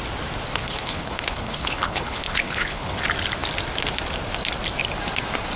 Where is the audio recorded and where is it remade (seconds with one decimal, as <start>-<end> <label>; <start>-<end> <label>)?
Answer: 0.0-0.5 recorded; 0.5-3.0 remade; 3.0-5.6 recorded